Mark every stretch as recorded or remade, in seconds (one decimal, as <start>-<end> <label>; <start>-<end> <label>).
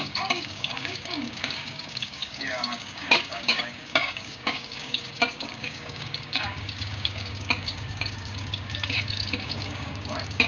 0.0-10.5 remade